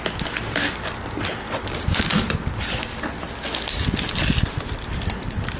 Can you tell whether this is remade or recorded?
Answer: recorded